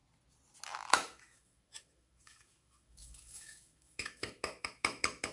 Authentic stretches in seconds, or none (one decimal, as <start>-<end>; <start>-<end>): 0.0-0.9